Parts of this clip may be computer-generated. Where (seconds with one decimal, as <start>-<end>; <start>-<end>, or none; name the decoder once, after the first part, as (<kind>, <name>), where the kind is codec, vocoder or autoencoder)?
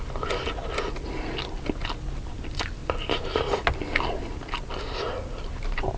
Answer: none